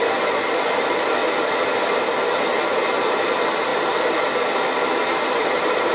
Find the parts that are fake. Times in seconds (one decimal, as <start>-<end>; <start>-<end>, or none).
0.0-1.2; 1.8-5.9